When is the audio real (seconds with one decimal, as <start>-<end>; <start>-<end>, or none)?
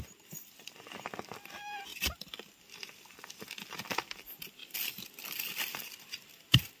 1.9-2.5; 4.6-5.5